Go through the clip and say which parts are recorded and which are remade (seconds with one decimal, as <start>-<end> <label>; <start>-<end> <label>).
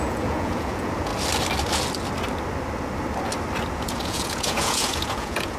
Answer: 0.0-1.1 remade; 1.1-3.7 recorded; 3.7-5.6 remade